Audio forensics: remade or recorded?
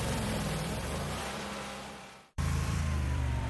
remade